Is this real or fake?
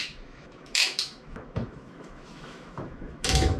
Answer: fake